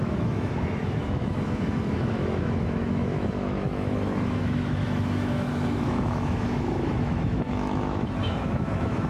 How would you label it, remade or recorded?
remade